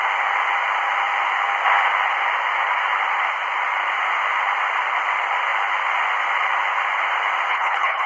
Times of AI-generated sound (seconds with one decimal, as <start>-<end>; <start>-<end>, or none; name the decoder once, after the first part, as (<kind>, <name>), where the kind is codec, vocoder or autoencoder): 7.5-8.1 (codec, HILCodec)